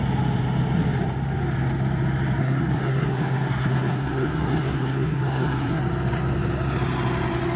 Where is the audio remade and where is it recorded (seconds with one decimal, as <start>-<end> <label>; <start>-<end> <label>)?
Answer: 0.0-2.4 recorded; 2.4-5.8 remade; 5.8-7.6 recorded